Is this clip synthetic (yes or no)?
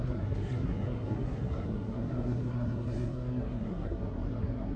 yes